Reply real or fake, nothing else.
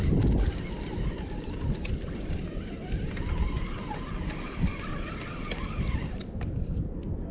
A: real